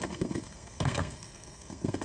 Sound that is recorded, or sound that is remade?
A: remade